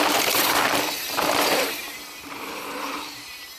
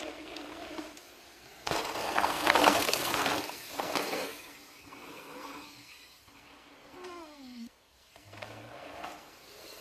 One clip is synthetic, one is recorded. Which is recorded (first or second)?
first